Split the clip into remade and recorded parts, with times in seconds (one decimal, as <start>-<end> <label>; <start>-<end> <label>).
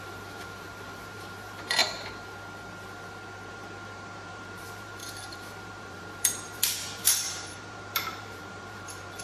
0.0-1.8 remade; 1.8-3.5 recorded; 3.5-9.2 remade